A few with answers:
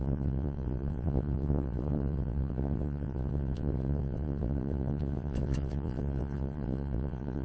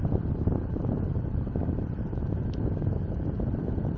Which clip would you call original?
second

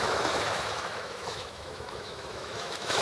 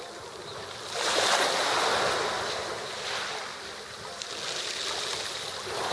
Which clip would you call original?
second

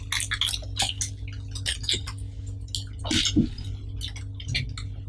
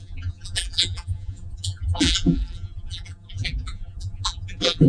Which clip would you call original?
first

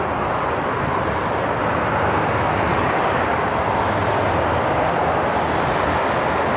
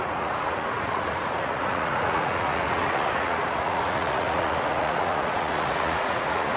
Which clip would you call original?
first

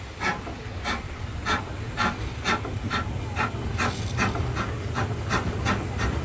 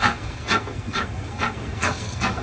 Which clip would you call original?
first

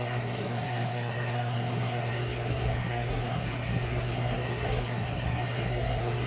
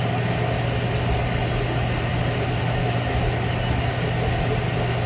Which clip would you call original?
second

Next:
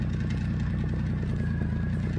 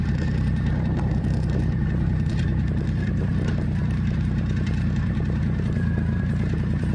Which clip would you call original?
first